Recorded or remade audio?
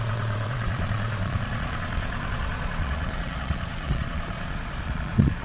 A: remade